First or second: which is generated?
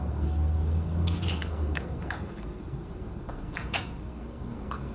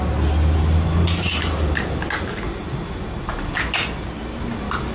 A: first